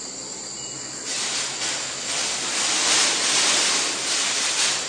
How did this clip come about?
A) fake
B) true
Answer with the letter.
B